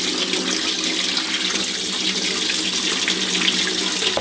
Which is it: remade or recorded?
recorded